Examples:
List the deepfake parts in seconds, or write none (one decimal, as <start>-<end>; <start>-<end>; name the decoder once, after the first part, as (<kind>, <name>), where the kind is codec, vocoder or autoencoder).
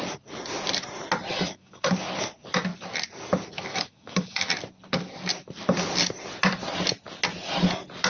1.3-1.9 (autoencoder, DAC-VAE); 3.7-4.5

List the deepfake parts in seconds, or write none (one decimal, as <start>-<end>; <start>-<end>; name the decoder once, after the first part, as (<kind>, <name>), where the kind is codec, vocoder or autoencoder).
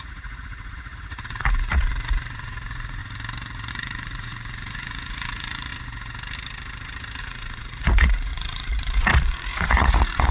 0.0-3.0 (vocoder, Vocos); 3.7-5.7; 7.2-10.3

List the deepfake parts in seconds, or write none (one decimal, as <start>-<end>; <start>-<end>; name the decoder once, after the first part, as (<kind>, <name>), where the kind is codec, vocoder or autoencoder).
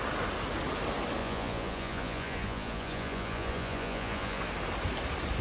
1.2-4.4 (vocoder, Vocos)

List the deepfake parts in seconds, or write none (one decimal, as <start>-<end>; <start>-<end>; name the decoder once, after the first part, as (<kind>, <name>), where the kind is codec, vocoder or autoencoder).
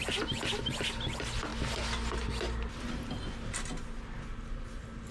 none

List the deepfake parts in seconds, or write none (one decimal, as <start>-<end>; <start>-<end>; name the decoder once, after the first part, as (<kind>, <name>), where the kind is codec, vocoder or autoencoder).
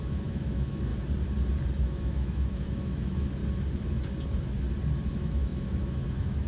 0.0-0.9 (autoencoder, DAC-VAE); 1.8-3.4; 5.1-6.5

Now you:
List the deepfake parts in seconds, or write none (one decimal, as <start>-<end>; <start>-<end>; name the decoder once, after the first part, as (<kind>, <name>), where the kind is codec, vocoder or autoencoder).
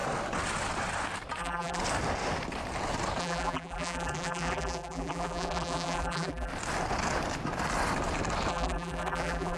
1.4-1.8 (vocoder, BigVGAN v2); 3.2-6.5; 8.5-9.6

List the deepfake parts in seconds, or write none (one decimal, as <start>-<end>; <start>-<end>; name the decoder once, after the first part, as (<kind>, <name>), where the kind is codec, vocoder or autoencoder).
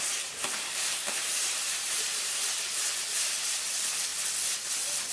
0.0-2.4 (vocoder, BigVGAN v2); 3.4-4.1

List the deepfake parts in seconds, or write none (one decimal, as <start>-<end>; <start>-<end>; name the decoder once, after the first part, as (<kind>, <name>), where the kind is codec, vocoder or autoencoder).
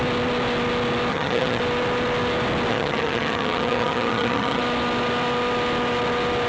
1.1-1.6 (vocoder, HiFi-GAN); 2.7-4.6